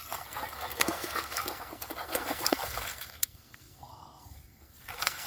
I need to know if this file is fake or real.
fake